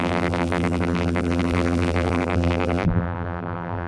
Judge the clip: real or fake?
fake